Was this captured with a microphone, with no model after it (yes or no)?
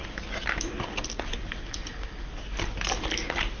yes